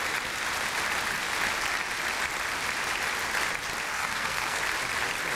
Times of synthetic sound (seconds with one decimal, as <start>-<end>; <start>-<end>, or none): 3.9-4.6